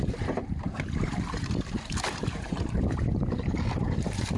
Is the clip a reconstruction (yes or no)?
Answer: yes